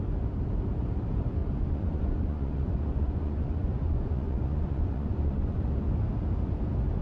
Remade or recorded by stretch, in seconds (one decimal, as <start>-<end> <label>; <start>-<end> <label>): 0.0-1.4 recorded; 1.4-5.6 remade; 5.6-7.0 recorded